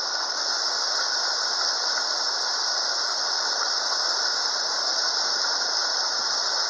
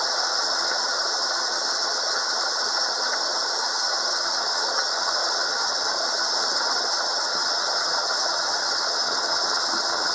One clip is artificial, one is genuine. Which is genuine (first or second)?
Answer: first